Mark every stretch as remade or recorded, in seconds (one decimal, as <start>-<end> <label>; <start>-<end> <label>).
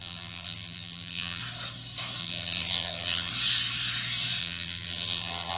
0.0-1.4 remade; 1.4-2.2 recorded; 2.2-3.3 remade; 3.3-4.4 recorded; 4.4-5.6 remade